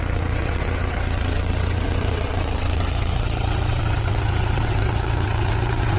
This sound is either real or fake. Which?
fake